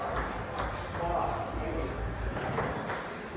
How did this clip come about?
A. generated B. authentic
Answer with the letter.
B